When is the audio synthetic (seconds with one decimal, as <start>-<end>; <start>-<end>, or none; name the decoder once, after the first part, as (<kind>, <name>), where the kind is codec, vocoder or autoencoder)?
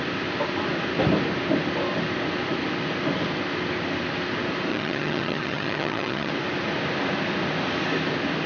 4.7-6.3 (vocoder, HiFi-GAN)